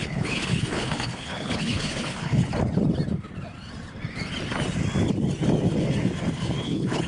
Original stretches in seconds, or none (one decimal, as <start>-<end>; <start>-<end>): 2.4-6.6